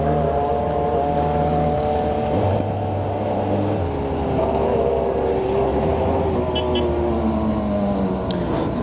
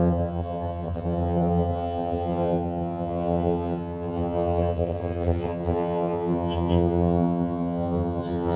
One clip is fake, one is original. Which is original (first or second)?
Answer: first